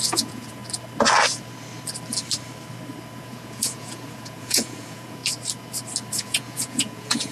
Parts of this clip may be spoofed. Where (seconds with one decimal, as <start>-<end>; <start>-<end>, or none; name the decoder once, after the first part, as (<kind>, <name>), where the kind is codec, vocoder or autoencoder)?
0.0-0.6 (vocoder, Vocos); 3.2-5.2; 6.1-7.3

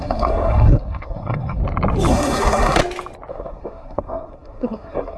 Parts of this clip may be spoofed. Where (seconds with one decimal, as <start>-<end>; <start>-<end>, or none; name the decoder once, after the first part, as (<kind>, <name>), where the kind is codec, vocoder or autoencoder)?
0.0-1.6 (codec, SNAC); 2.1-2.8; 3.3-5.2